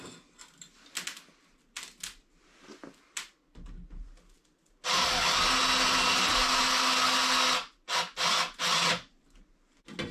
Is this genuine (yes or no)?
yes